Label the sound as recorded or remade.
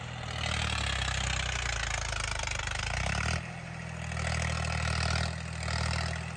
recorded